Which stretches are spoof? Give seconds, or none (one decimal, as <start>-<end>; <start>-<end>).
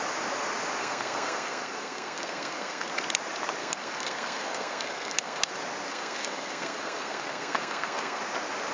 0.8-2.9; 3.6-5.5; 5.9-8.2